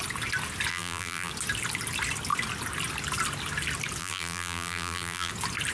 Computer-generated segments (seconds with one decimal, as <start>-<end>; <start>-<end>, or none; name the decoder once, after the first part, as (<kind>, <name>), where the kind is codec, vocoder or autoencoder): 0.7-1.3 (vocoder, BigVGAN v2); 4.0-5.3